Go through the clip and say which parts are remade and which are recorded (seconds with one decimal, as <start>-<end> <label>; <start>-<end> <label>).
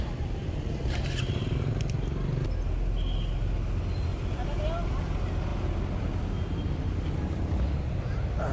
0.0-8.5 recorded